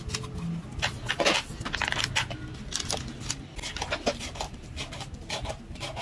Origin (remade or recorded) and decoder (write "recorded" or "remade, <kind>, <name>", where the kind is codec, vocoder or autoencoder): recorded